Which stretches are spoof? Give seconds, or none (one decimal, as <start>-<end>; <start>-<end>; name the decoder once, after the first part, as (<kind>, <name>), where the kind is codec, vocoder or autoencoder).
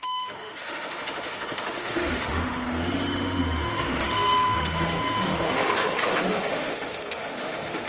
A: 0.0-7.9 (autoencoder, DAC-VAE)